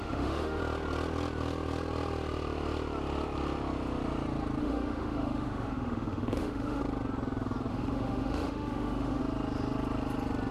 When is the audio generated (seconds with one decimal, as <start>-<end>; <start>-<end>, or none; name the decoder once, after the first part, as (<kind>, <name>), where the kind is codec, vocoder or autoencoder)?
0.0-0.6 (autoencoder, DAC-VAE); 4.6-6.8; 7.7-9.2